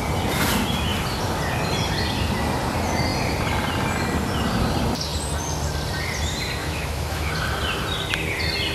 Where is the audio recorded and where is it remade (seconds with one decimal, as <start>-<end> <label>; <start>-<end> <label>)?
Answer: 0.0-6.6 recorded; 6.6-7.3 remade; 7.3-8.7 recorded